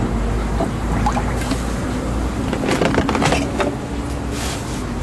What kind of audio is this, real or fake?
real